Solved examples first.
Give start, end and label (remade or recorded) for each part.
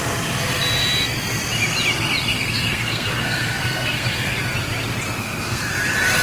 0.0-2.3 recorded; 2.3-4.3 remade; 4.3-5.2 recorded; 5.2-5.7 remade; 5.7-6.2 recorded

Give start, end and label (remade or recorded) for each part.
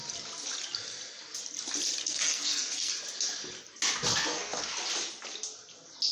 0.0-2.0 recorded; 2.0-2.9 remade; 2.9-4.1 recorded; 4.1-4.6 remade; 4.6-6.1 recorded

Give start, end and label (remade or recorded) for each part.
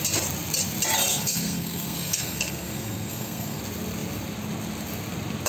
0.0-1.1 recorded; 1.1-3.6 remade; 3.6-5.5 recorded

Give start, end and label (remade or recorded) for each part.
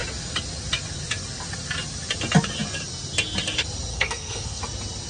0.0-3.9 recorded; 3.9-4.6 remade; 4.6-5.1 recorded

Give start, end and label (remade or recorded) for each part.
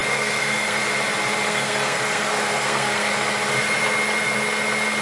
0.0-0.8 remade; 0.8-1.5 recorded; 1.5-3.1 remade; 3.1-5.0 recorded